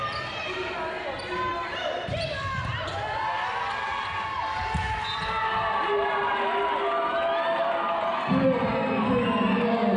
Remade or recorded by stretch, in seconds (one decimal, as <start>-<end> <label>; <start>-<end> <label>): 0.0-10.0 recorded